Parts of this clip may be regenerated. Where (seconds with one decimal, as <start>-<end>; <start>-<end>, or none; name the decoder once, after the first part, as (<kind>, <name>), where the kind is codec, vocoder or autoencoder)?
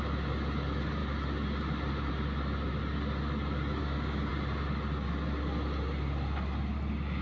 3.8-4.3 (codec, DAC)